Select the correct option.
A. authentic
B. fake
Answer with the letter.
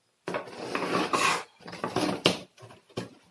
A